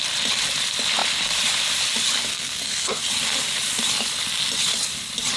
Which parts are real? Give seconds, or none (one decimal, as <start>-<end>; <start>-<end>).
0.0-2.3; 3.0-5.4